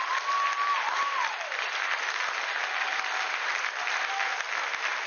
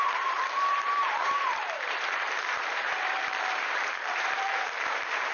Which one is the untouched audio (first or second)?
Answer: first